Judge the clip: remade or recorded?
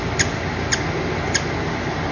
recorded